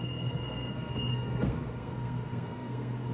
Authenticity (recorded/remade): remade